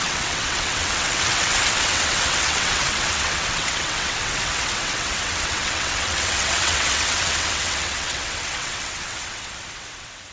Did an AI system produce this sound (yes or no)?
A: yes